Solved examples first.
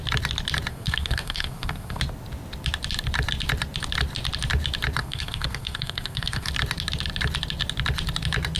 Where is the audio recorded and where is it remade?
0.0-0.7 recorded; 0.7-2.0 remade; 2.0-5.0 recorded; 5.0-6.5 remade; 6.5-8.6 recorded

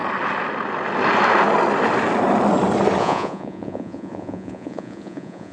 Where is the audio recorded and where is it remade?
0.0-3.0 recorded; 3.0-5.5 remade

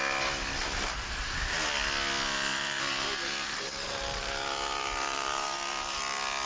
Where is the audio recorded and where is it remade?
0.0-2.5 recorded; 2.5-6.0 remade; 6.0-6.5 recorded

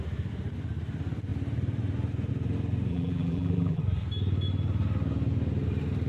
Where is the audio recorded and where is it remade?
0.0-2.9 recorded; 2.9-3.8 remade; 3.8-6.1 recorded

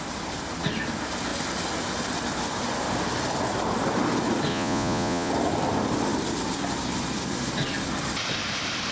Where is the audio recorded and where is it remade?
0.0-4.5 recorded; 4.5-5.3 remade; 5.3-8.9 recorded

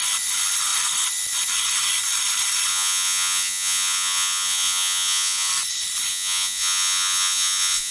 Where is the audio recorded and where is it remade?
0.0-2.7 recorded; 2.7-5.5 remade; 5.5-6.1 recorded; 6.1-7.9 remade